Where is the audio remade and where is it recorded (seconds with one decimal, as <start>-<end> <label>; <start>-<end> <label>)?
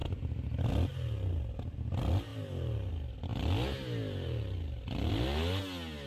0.0-6.1 recorded